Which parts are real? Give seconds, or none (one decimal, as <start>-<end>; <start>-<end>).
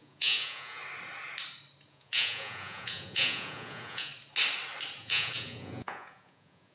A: 0.8-1.9; 4.1-5.0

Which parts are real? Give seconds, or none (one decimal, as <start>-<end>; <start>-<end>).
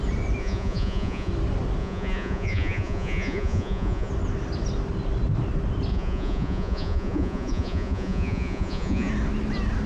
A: 0.0-0.4; 1.3-1.8; 4.1-5.9; 9.1-9.9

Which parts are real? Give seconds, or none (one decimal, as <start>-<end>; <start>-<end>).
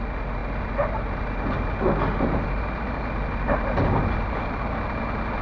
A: 0.0-5.4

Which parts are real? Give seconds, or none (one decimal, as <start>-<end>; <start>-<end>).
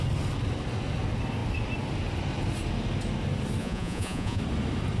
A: 0.0-3.6; 4.4-5.0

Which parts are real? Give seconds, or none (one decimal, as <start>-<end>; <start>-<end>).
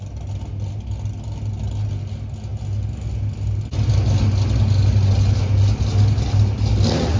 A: 0.0-7.2